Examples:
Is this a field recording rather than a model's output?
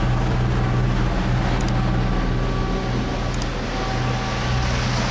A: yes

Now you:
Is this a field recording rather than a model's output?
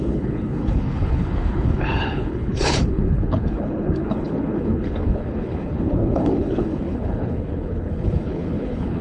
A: no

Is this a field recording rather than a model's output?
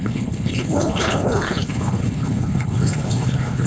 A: no